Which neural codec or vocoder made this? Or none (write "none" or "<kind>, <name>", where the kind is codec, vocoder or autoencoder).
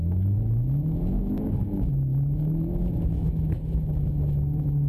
autoencoder, DAC-VAE